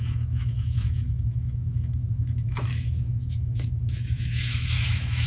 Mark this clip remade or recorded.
remade